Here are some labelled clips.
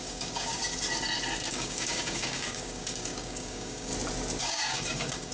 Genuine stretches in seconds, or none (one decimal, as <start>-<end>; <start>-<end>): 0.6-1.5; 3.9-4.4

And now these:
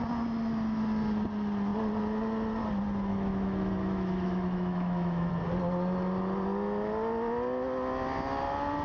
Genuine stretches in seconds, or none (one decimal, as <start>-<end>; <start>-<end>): 0.0-3.1; 5.3-8.8

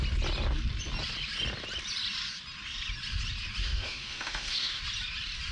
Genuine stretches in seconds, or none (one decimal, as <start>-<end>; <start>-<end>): 0.0-3.6; 4.8-5.5

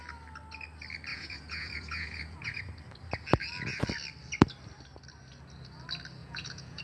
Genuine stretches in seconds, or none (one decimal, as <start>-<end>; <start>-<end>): 0.0-1.1; 2.6-6.2